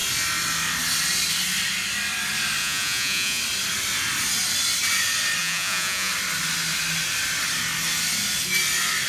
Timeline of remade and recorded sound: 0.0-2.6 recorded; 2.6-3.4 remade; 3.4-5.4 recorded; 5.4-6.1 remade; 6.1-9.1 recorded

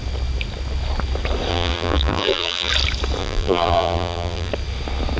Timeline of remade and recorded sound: 0.0-1.5 recorded; 1.5-2.7 remade; 2.7-3.2 recorded; 3.2-4.5 remade; 4.5-5.2 recorded

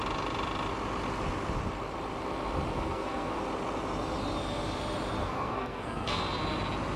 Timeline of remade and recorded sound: 0.0-2.7 recorded; 2.7-3.4 remade; 3.4-5.2 recorded; 5.2-6.2 remade; 6.2-7.0 recorded

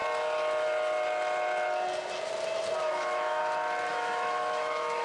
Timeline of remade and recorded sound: 0.0-2.9 recorded; 2.9-3.4 remade; 3.4-3.9 recorded; 3.9-5.0 remade

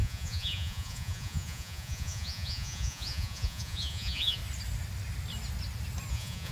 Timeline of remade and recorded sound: 0.0-4.4 remade; 4.4-6.1 recorded; 6.1-6.5 remade

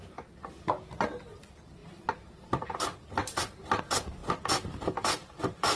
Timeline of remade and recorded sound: 0.0-0.5 remade; 0.5-1.8 recorded; 1.8-2.7 remade; 2.7-5.8 recorded

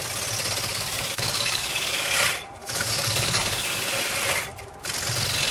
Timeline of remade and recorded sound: 0.0-0.7 recorded; 0.7-2.2 remade; 2.2-2.6 recorded; 2.6-3.9 remade; 3.9-5.5 recorded